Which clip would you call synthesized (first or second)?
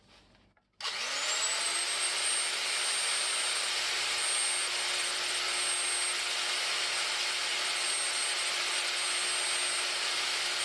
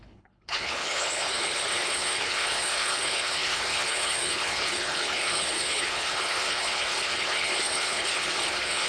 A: second